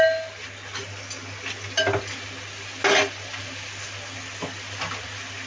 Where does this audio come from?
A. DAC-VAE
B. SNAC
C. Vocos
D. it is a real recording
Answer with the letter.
D